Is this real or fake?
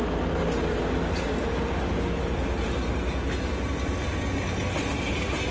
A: real